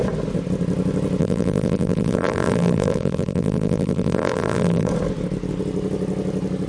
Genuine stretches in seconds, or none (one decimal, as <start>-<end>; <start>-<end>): 0.0-1.2; 4.9-6.7